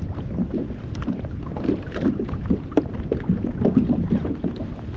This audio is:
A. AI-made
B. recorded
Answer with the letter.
B